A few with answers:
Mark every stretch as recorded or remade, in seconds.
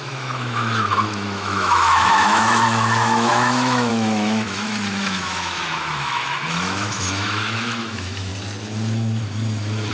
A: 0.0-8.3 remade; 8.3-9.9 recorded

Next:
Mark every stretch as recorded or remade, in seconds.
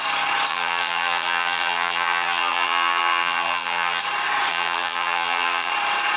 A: 0.0-0.5 recorded; 0.5-4.0 remade; 4.0-4.5 recorded; 4.5-5.7 remade; 5.7-6.2 recorded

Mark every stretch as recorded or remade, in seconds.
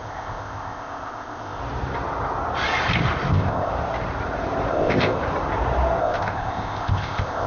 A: 0.0-1.6 remade; 1.6-3.3 recorded; 3.3-3.7 remade; 3.7-4.7 recorded; 4.7-5.2 remade; 5.2-6.0 recorded; 6.0-7.5 remade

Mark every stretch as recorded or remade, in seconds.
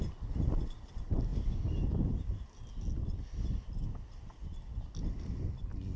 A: 0.0-6.0 recorded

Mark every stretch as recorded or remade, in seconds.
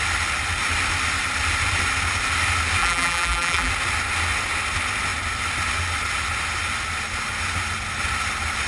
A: 0.0-2.8 recorded; 2.8-3.7 remade; 3.7-8.7 recorded